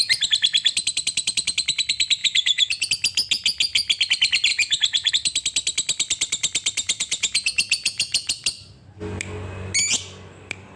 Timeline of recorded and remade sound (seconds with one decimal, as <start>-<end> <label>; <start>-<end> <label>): 0.0-2.2 recorded; 2.2-2.9 remade; 2.9-4.5 recorded; 4.5-5.1 remade; 5.1-6.8 recorded; 6.8-8.3 remade; 8.3-10.8 recorded